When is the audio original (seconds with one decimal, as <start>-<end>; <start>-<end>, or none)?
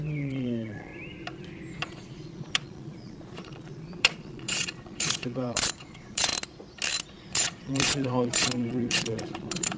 0.9-1.8; 6.3-7.1